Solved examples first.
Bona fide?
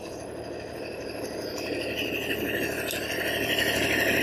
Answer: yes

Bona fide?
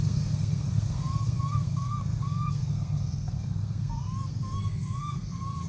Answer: no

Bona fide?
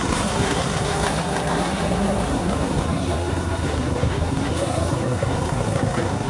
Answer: no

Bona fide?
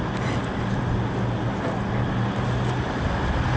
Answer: yes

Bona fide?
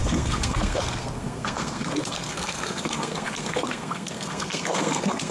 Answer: no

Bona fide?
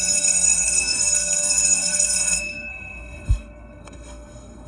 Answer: no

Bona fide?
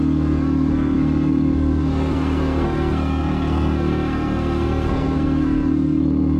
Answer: no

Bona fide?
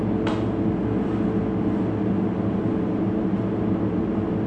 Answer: yes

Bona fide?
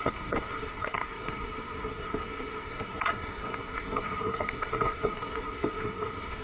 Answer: no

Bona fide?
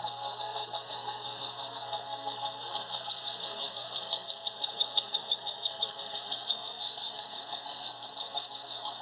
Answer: no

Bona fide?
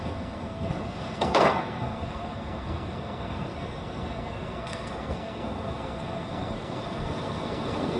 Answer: no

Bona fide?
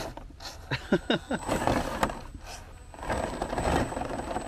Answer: yes